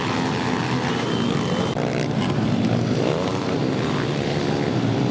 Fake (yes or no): no